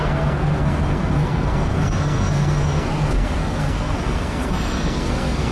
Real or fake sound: fake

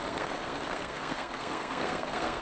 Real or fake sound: fake